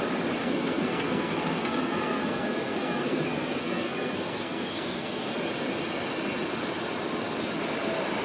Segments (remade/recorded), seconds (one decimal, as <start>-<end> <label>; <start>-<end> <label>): 0.0-0.4 recorded; 0.4-5.3 remade; 5.3-8.2 recorded